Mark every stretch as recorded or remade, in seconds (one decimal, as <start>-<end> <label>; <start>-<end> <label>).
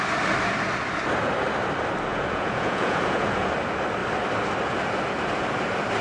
0.0-2.1 recorded; 2.1-3.5 remade; 3.5-6.0 recorded